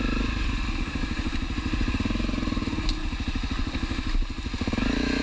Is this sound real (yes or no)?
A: yes